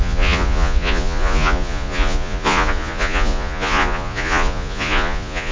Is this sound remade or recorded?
remade